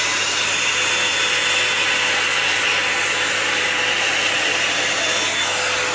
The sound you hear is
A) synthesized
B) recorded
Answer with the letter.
B